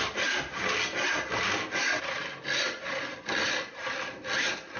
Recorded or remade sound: recorded